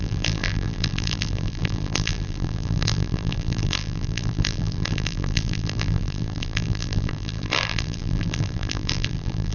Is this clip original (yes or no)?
no